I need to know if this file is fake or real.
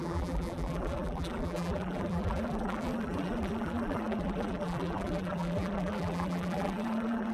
fake